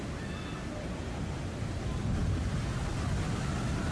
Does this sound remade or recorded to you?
recorded